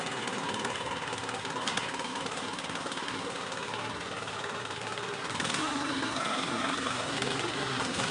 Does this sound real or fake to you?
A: fake